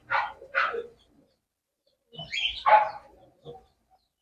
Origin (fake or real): real